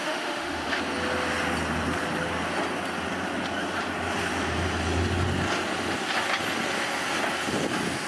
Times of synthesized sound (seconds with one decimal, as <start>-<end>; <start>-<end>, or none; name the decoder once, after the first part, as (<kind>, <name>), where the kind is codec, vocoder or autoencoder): 0.0-0.8 (autoencoder, DAC-VAE)